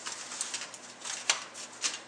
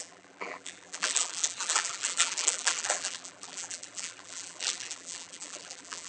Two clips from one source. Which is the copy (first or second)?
second